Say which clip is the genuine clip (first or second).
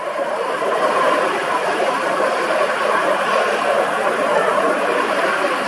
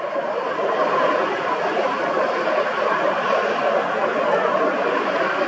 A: second